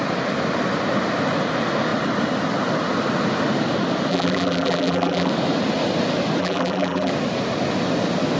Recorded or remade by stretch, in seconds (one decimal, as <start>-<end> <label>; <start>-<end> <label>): 0.0-4.1 recorded; 4.1-5.3 remade; 5.3-6.4 recorded; 6.4-7.1 remade; 7.1-8.4 recorded